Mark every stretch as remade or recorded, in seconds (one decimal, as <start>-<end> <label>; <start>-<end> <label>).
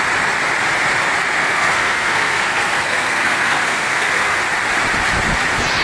0.0-1.4 recorded; 1.4-4.4 remade; 4.4-5.8 recorded